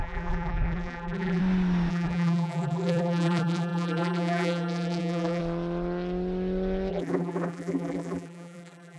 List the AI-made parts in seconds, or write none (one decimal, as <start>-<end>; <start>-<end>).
0.0-1.4; 1.9-5.4; 6.9-9.0